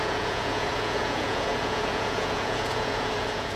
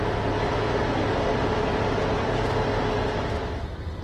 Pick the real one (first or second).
second